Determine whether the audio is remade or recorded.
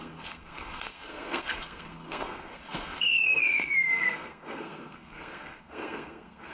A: remade